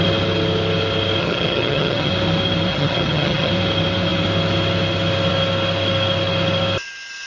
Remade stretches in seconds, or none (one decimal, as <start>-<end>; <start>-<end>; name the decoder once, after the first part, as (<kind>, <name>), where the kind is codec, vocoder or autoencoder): 1.2-2.1 (vocoder, HiFi-GAN); 2.7-3.5